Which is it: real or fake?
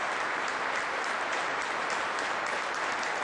real